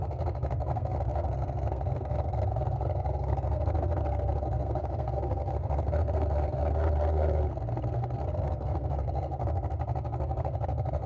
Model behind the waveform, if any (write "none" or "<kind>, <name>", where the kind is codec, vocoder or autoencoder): codec, SNAC